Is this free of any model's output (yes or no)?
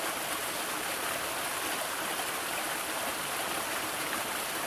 yes